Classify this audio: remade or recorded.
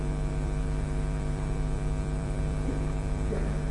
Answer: remade